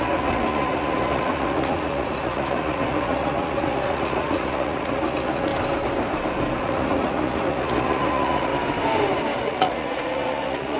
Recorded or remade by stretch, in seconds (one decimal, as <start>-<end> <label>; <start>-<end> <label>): 0.0-5.5 remade; 5.5-6.6 recorded; 6.6-8.5 remade; 8.5-9.4 recorded; 9.4-10.8 remade